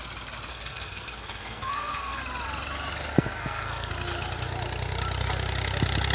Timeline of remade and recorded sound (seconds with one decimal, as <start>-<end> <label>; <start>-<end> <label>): 0.0-0.5 recorded; 0.5-2.2 remade; 2.2-3.1 recorded; 3.1-3.9 remade; 3.9-6.1 recorded